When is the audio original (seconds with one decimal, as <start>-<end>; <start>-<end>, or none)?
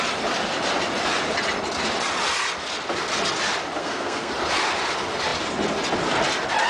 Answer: 0.0-3.8; 4.3-6.7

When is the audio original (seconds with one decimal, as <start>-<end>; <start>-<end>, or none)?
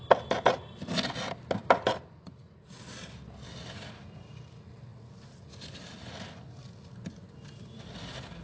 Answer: 0.0-8.4